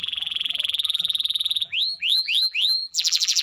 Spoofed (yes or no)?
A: yes